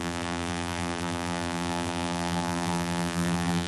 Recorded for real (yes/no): no